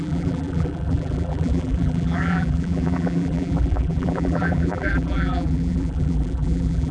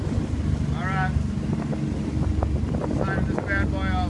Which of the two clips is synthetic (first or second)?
first